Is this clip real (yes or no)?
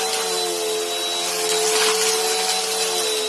yes